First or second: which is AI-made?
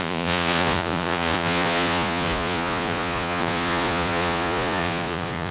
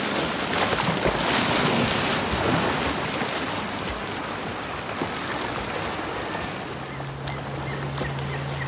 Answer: first